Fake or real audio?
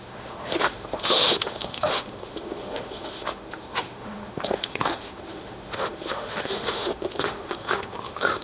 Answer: fake